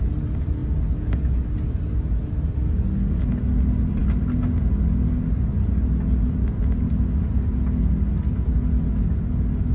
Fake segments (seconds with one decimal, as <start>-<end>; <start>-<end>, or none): none